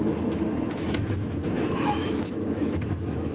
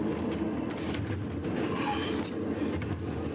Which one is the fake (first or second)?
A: first